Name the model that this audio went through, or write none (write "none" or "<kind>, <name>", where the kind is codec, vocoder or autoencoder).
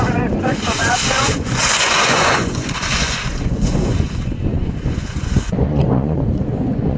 vocoder, Vocos